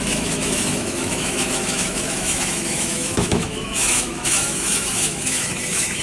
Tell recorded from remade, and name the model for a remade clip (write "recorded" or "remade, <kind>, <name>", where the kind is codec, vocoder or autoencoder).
remade, autoencoder, DAC-VAE